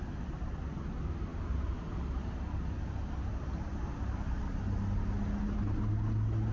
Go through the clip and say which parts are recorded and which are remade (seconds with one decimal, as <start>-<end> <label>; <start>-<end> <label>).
0.0-6.5 recorded